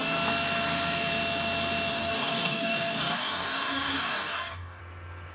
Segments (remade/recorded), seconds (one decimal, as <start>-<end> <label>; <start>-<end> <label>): 0.0-1.9 recorded; 1.9-4.8 remade; 4.8-5.3 recorded